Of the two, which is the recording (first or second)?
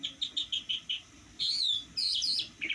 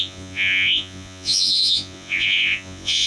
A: first